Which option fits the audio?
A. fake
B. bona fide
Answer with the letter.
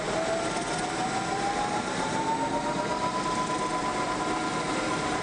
B